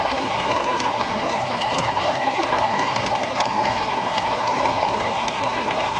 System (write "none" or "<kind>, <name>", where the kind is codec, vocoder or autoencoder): codec, SNAC